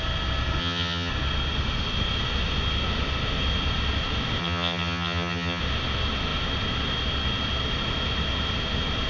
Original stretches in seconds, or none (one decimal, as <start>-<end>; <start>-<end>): 0.0-0.6; 1.1-4.4; 5.6-9.1